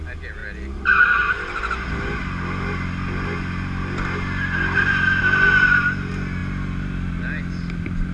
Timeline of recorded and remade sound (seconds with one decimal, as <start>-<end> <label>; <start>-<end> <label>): 0.0-8.1 recorded